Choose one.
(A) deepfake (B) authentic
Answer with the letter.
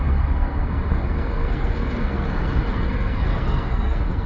A